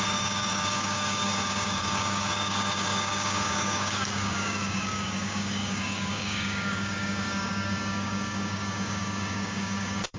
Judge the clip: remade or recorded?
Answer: remade